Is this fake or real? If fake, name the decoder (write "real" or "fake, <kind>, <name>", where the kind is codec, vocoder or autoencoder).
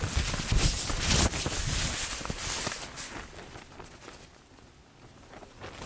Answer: real